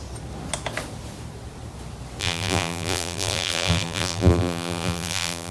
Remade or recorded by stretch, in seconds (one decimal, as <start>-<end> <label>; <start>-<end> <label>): 0.0-2.2 recorded; 2.2-5.5 remade